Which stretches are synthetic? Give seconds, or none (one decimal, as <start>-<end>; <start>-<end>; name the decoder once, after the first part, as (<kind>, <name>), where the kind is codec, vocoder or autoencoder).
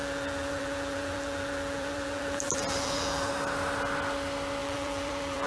0.0-3.3 (vocoder, BigVGAN v2); 4.6-5.5